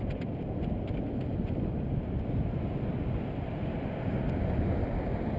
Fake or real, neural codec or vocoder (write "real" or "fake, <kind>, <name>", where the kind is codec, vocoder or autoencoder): real